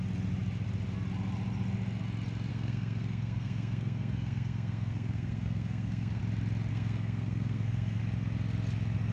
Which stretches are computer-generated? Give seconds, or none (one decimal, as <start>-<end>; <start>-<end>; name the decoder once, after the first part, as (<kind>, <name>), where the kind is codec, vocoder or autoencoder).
2.5-6.2 (codec, SNAC); 6.7-8.0